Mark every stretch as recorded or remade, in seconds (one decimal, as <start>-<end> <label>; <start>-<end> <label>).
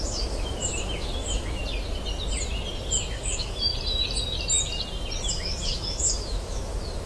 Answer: 0.0-1.6 remade; 1.6-3.1 recorded; 3.1-3.7 remade; 3.7-5.3 recorded; 5.3-7.1 remade